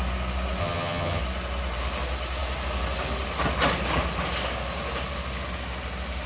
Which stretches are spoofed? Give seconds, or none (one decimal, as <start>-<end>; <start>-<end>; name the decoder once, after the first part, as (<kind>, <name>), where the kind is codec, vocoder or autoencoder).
0.6-1.2 (vocoder, HiFi-GAN)